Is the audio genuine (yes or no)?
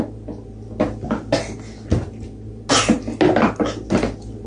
yes